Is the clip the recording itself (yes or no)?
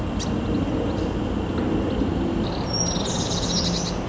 yes